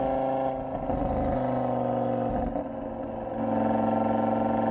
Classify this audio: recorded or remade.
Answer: recorded